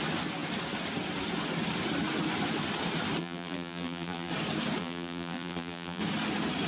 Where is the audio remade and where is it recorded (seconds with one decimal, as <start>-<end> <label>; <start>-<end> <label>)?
0.0-3.2 recorded; 3.2-4.3 remade; 4.3-4.8 recorded; 4.8-6.0 remade; 6.0-6.7 recorded